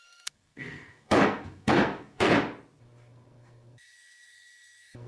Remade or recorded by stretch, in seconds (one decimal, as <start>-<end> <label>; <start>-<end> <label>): 0.0-2.3 remade; 2.3-2.8 recorded; 2.8-5.1 remade

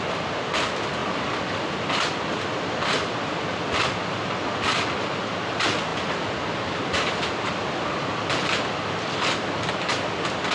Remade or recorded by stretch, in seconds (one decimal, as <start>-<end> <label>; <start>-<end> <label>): 0.0-10.5 recorded

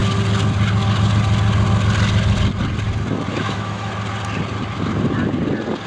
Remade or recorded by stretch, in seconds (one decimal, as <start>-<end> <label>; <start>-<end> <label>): 0.0-3.3 recorded; 3.3-3.9 remade; 3.9-5.9 recorded

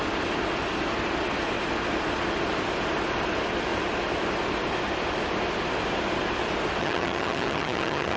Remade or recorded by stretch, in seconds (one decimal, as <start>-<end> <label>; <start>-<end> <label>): 0.0-6.8 recorded; 6.8-8.2 remade

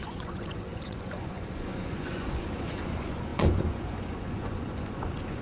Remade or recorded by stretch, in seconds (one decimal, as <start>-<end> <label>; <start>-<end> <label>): 0.0-5.4 remade